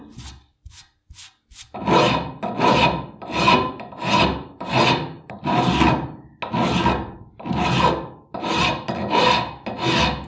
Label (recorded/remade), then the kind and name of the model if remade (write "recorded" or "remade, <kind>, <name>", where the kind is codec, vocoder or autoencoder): recorded